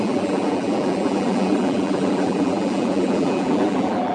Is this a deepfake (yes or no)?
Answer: yes